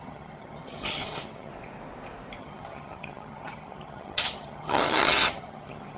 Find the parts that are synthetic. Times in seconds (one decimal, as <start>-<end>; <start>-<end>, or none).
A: 0.0-1.5; 2.4-6.0